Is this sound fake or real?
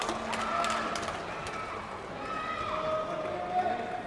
real